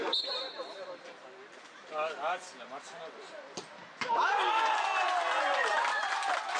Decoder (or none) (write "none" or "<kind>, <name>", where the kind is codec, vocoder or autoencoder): none